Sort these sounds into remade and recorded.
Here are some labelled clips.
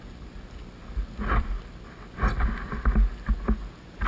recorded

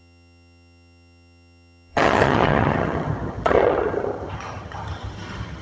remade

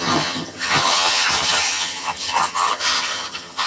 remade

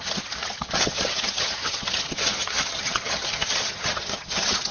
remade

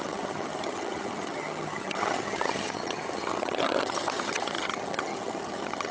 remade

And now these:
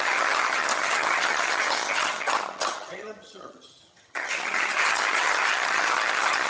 remade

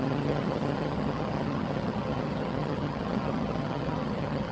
remade